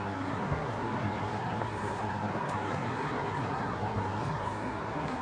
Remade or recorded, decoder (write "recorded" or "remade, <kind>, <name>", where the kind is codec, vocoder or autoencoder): remade, codec, SNAC